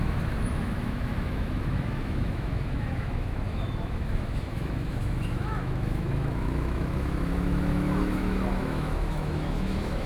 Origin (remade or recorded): remade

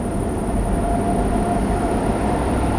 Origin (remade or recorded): recorded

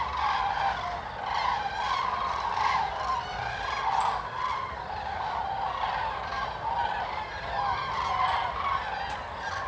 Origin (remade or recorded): recorded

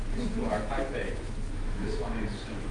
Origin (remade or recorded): remade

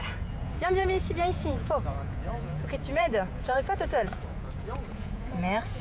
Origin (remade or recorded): remade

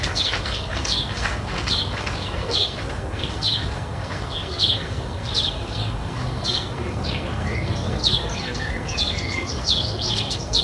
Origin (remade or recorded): remade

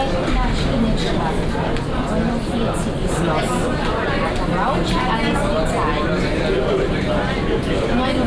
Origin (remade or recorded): recorded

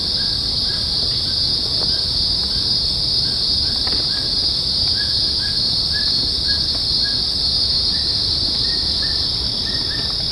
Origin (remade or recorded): recorded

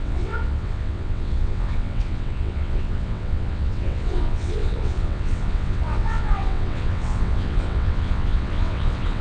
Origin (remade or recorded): remade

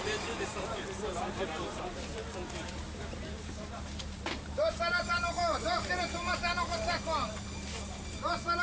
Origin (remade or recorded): remade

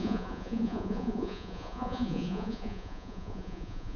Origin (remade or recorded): remade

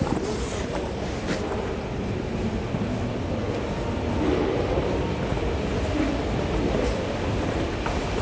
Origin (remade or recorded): recorded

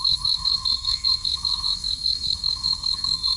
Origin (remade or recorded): remade